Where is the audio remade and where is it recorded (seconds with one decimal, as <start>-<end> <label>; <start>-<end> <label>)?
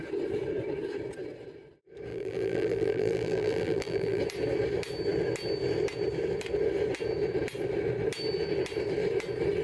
0.0-2.1 recorded; 2.1-4.2 remade; 4.2-9.6 recorded